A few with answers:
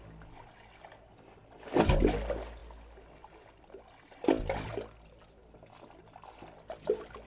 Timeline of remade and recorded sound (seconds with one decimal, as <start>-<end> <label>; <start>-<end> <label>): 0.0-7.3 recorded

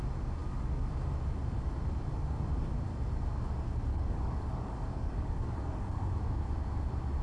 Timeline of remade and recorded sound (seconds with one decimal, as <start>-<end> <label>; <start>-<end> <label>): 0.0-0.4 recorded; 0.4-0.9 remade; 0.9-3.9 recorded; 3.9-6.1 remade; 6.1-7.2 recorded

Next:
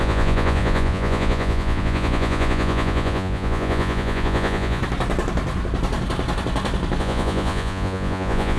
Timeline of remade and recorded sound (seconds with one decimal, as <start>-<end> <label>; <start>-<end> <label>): 0.0-4.8 remade; 4.8-7.0 recorded; 7.0-8.6 remade

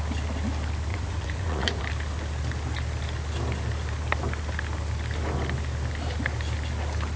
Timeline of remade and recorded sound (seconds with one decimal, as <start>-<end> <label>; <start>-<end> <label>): 0.0-0.9 recorded; 0.9-1.8 remade; 1.8-7.2 recorded